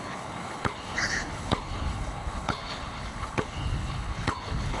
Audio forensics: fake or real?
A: fake